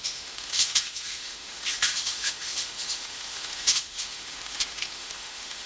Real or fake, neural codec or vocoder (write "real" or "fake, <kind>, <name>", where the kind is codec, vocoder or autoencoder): fake, autoencoder, DAC-VAE